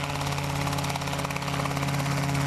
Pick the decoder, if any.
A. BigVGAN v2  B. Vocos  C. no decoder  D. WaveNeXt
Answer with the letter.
C